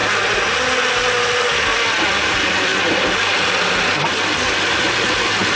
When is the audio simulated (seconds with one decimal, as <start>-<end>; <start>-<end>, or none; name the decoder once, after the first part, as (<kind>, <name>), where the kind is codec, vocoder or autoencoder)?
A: none